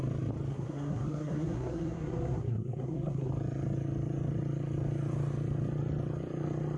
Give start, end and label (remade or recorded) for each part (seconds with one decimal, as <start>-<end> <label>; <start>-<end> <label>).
0.0-0.5 recorded; 0.5-3.3 remade; 3.3-6.8 recorded